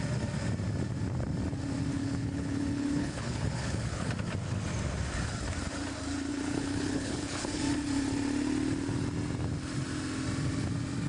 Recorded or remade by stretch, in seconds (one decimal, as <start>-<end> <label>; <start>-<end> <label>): 0.0-1.9 recorded; 1.9-4.1 remade; 4.1-6.3 recorded; 6.3-7.6 remade; 7.6-11.1 recorded

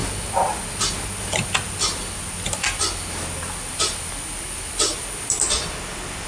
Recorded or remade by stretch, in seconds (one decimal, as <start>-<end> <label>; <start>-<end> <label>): 0.0-6.3 recorded

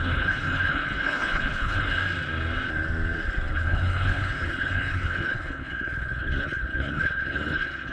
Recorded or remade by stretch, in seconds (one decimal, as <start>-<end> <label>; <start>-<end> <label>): 0.0-2.0 remade; 2.0-3.5 recorded; 3.5-7.9 remade

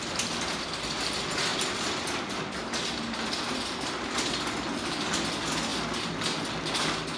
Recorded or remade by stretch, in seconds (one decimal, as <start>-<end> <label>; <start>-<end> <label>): 0.0-7.2 recorded